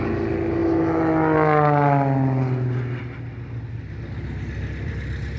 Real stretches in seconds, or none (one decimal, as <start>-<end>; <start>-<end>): 0.0-5.4